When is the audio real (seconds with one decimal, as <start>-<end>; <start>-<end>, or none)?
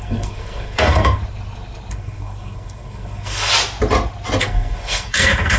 1.2-1.9; 3.5-4.4